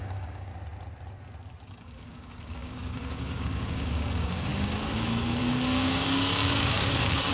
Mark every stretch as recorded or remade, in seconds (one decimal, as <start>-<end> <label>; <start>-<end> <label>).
0.0-0.5 remade; 0.5-1.7 recorded; 1.7-7.3 remade